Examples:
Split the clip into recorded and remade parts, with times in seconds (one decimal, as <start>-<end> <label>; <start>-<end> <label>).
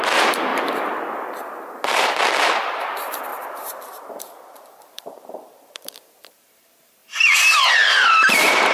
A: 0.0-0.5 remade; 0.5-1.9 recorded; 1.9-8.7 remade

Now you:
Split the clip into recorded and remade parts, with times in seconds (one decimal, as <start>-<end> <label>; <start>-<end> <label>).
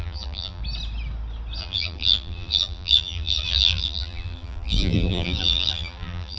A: 0.0-0.6 remade; 0.6-1.6 recorded; 1.6-6.4 remade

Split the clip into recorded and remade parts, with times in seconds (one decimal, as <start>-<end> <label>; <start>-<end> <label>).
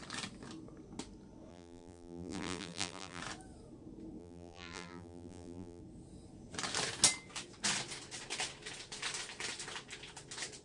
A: 0.0-1.5 recorded; 1.5-3.2 remade; 3.2-4.2 recorded; 4.2-5.8 remade; 5.8-10.6 recorded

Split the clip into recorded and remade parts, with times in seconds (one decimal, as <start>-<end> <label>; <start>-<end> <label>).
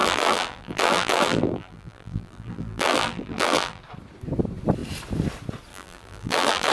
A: 0.0-3.8 remade; 3.8-5.7 recorded; 5.7-6.7 remade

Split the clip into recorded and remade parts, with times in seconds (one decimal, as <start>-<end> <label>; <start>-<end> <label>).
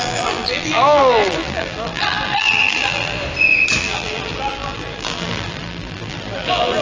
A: 0.0-3.2 remade; 3.2-3.8 recorded; 3.8-6.8 remade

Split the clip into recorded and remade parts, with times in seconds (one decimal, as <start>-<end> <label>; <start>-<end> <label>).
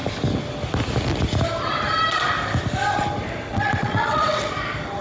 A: 0.0-3.5 recorded; 3.5-4.5 remade; 4.5-5.0 recorded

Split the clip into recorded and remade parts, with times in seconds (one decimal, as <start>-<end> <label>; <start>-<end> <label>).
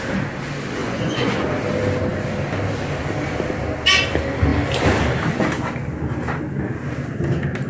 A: 0.0-0.8 recorded; 0.8-1.5 remade; 1.5-7.7 recorded